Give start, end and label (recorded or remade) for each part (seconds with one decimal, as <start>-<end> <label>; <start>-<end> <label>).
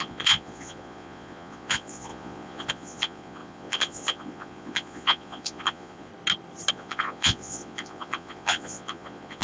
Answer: 0.0-6.1 remade; 6.1-6.7 recorded; 6.7-9.4 remade